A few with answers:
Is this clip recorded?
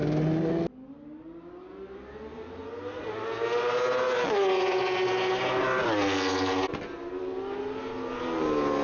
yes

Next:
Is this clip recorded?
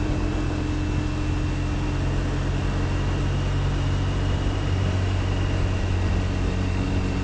yes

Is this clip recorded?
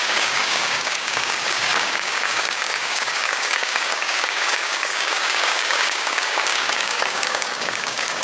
no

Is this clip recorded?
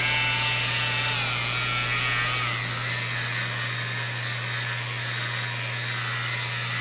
yes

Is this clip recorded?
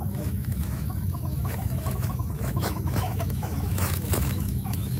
no